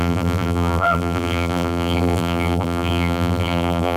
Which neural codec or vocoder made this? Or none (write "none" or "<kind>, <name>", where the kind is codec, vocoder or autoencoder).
vocoder, BigVGAN v2